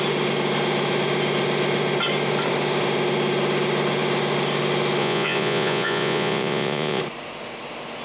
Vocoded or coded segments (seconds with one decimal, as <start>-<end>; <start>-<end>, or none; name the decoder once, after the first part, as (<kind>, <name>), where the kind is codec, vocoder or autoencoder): 5.0-7.0 (vocoder, Vocos)